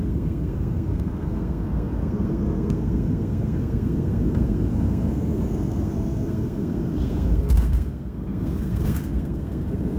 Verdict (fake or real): fake